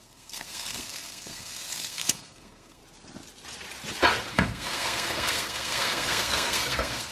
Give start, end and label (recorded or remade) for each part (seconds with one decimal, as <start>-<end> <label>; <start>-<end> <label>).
0.0-2.8 remade; 2.8-4.3 recorded; 4.3-7.1 remade